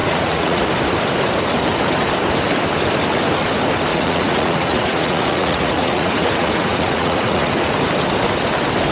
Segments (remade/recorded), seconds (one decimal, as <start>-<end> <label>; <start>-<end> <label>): 0.0-0.6 remade; 0.6-3.9 recorded; 3.9-7.5 remade; 7.5-8.9 recorded